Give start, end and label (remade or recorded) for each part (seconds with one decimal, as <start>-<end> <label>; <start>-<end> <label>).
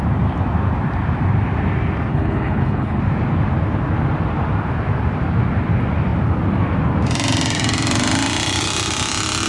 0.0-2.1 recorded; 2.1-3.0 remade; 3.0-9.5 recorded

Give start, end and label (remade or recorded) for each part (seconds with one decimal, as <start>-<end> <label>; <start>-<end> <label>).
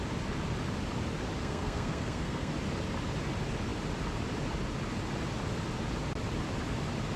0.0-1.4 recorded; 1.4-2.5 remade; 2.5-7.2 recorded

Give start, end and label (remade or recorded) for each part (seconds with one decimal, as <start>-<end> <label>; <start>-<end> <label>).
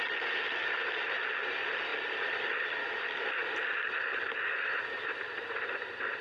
0.0-1.9 recorded; 1.9-2.9 remade; 2.9-3.4 recorded; 3.4-6.2 remade